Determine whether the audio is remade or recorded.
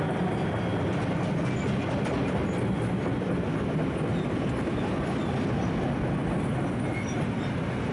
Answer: recorded